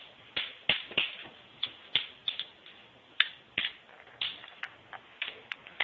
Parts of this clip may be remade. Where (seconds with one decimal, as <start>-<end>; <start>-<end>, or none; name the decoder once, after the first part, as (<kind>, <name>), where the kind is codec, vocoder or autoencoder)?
2.2-4.6 (vocoder, BigVGAN v2)